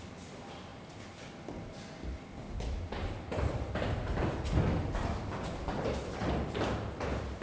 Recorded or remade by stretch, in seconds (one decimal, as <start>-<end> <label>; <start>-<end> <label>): 0.0-7.4 recorded

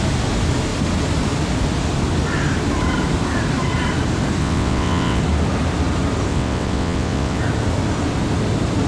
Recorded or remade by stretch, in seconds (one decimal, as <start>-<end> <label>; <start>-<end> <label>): 0.0-4.4 recorded; 4.4-5.2 remade; 5.2-6.3 recorded; 6.3-7.4 remade; 7.4-8.9 recorded

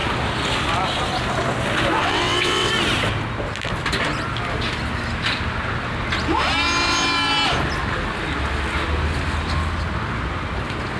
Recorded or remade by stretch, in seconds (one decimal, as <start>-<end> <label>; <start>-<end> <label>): 0.0-2.0 recorded; 2.0-2.7 remade; 2.7-11.0 recorded

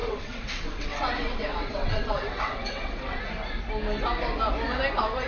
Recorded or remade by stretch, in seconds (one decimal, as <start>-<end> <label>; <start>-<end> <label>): 0.0-3.2 remade; 3.2-5.3 recorded